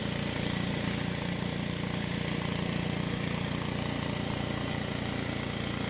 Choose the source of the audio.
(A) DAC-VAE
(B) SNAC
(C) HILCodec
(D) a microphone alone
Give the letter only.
D